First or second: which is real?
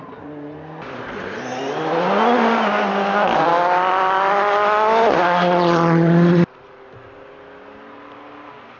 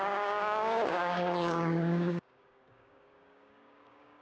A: first